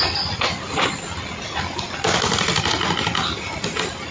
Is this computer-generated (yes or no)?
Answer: no